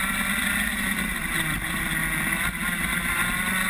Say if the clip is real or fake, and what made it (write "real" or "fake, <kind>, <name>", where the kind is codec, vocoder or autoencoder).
real